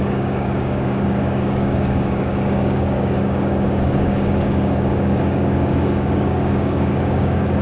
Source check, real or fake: fake